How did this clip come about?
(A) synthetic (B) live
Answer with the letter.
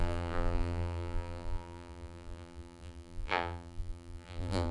A